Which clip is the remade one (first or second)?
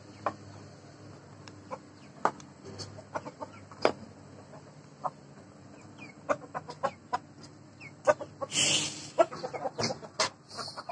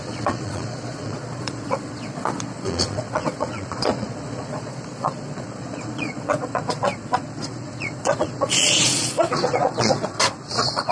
second